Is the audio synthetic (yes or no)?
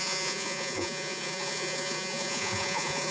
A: yes